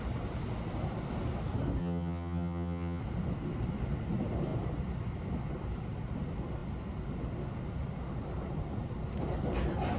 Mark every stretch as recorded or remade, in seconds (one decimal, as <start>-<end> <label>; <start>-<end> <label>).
0.0-1.8 recorded; 1.8-3.0 remade; 3.0-10.0 recorded